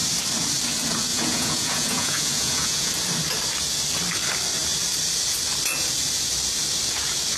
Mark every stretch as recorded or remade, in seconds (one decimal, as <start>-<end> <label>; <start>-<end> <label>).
0.0-1.1 recorded; 1.1-2.9 remade; 2.9-7.4 recorded